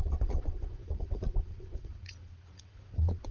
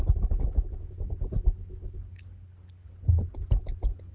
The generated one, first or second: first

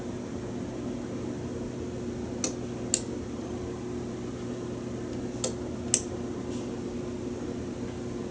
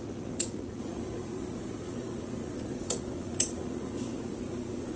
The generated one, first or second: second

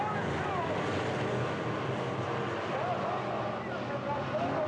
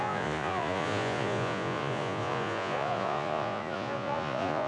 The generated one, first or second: second